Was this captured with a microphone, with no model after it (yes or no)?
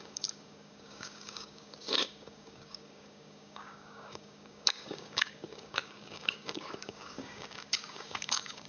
no